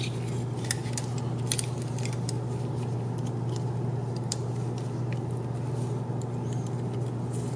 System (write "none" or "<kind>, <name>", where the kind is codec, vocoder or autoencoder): none